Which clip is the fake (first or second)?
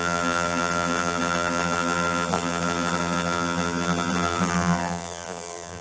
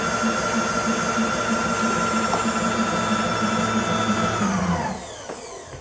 first